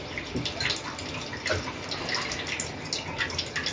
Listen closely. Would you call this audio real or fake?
real